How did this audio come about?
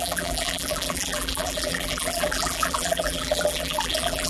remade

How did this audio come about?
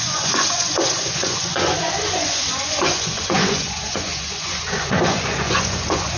remade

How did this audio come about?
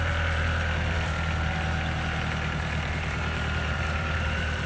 remade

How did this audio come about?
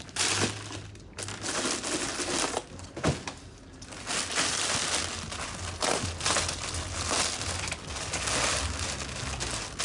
recorded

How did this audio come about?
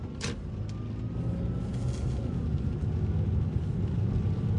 recorded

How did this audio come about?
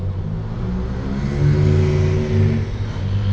recorded